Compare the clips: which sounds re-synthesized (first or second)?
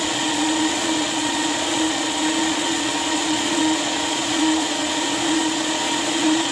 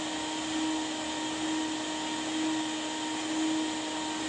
first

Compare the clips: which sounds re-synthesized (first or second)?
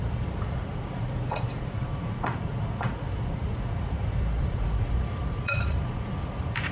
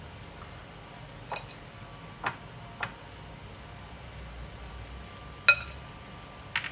first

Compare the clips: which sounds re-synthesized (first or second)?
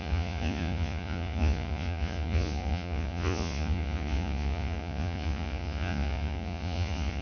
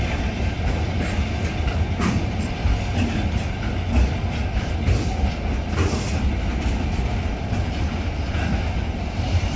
first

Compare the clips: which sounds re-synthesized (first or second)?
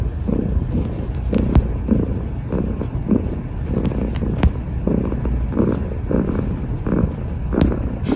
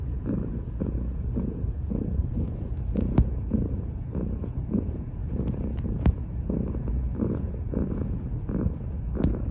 second